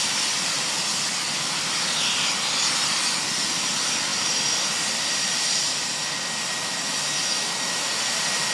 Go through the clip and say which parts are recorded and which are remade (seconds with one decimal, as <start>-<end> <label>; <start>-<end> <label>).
0.0-8.5 recorded